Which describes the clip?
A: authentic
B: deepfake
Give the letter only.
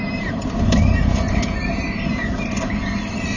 A